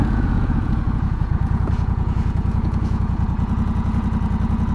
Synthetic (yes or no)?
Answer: yes